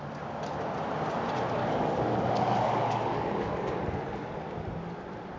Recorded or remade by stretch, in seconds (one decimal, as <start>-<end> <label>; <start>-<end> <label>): 0.0-1.6 recorded; 1.6-3.8 remade; 3.8-5.4 recorded